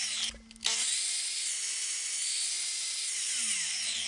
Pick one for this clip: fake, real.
real